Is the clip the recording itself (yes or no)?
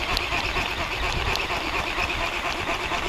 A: no